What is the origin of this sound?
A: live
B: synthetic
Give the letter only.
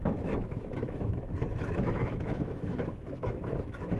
B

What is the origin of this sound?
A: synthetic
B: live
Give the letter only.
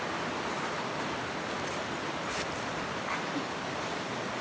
B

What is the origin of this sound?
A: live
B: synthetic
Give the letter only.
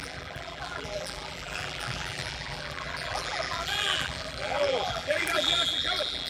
B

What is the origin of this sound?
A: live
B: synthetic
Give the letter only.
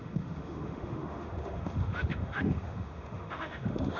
B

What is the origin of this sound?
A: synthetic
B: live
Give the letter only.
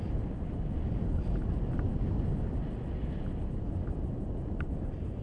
B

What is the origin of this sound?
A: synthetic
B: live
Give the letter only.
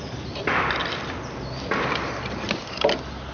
B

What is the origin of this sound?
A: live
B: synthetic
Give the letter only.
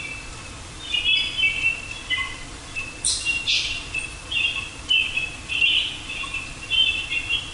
A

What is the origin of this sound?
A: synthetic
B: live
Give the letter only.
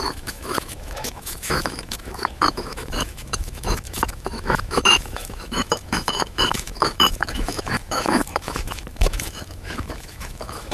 A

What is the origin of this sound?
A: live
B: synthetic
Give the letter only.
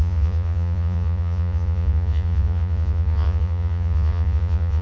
B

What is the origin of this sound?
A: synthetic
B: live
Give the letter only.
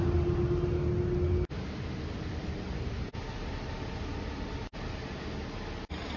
B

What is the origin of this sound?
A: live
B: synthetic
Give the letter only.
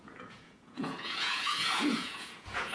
B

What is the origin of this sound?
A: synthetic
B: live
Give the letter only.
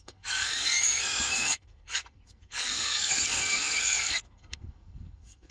A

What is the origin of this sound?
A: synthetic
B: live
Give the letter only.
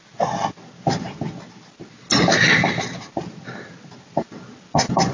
B